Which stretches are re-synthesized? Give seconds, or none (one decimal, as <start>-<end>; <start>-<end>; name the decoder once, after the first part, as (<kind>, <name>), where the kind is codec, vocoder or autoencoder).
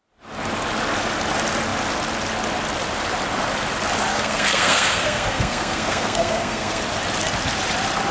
4.1-6.8 (codec, SNAC)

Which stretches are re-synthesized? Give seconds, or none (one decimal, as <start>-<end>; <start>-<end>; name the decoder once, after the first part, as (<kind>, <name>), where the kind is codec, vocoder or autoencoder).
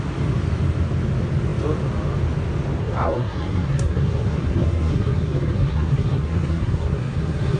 2.8-7.6 (codec, SNAC)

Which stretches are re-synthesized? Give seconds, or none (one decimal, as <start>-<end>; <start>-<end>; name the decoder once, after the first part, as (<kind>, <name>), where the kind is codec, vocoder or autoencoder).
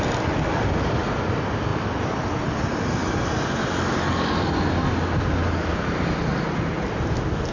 none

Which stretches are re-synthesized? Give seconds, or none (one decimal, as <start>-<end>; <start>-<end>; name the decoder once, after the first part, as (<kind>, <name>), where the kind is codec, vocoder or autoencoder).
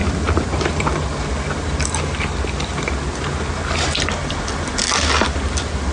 none